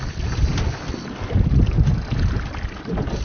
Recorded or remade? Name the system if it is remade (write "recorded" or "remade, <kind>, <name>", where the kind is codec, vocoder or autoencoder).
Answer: recorded